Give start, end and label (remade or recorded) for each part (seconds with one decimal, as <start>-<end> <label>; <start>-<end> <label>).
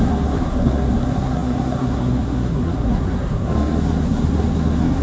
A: 0.0-5.0 remade